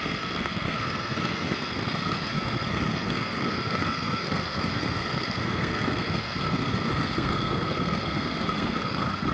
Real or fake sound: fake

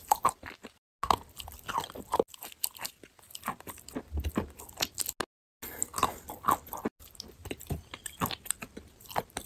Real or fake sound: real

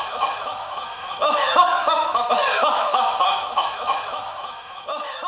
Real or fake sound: fake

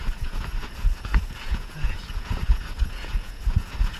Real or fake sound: fake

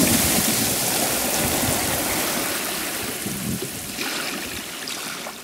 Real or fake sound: fake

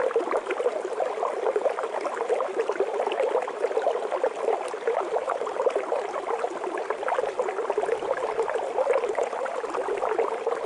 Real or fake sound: real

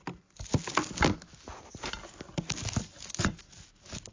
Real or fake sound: real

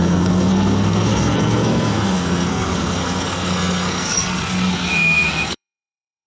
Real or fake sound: fake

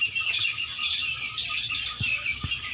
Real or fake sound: real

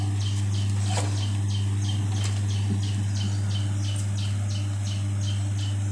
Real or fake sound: real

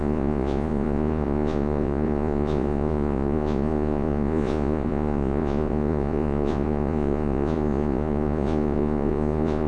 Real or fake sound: fake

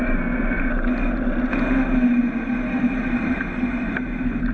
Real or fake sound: real